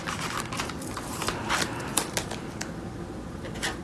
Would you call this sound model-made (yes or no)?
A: no